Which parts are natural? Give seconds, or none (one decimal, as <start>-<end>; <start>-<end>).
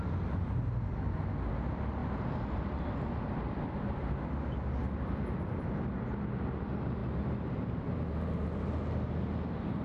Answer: 0.0-9.8